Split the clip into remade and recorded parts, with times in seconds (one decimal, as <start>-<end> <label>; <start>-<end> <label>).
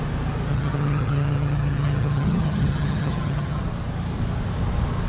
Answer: 0.0-0.5 recorded; 0.5-3.6 remade; 3.6-5.1 recorded